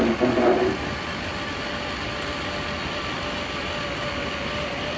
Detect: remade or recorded recorded